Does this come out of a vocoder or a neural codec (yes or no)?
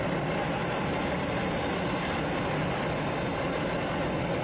no